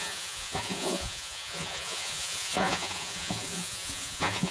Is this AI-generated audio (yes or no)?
yes